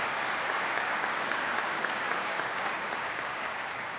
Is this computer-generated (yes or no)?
yes